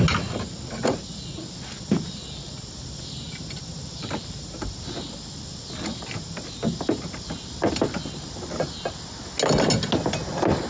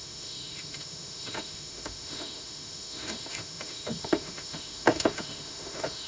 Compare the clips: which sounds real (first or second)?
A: first